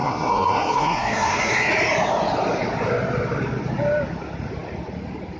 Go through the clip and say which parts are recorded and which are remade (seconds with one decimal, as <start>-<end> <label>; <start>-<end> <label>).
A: 0.0-1.7 remade; 1.7-5.4 recorded